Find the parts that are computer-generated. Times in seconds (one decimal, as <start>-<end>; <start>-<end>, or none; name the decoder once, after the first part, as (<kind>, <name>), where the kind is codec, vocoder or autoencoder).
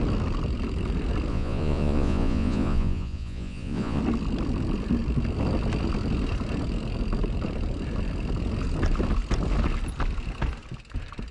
1.3-4.0 (vocoder, Vocos)